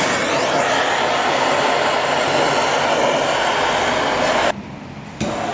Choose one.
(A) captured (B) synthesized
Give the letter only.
A